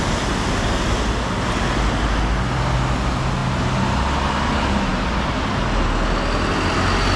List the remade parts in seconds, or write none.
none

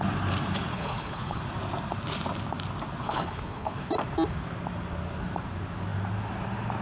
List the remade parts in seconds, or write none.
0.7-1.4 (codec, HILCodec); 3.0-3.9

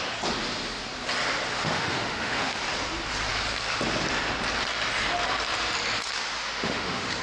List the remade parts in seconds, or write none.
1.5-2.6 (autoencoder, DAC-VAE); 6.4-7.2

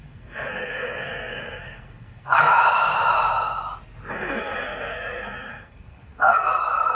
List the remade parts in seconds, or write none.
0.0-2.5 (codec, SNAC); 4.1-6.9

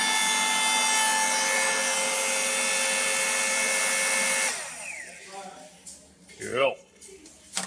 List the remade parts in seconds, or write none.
6.5-7.1 (codec, HILCodec)

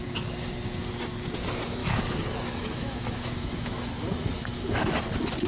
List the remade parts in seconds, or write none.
1.8-5.0 (autoencoder, DAC-VAE)